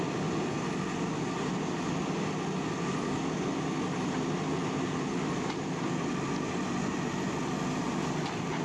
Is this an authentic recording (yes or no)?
yes